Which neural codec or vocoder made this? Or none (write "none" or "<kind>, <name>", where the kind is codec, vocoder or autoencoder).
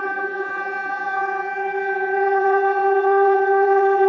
vocoder, BigVGAN v2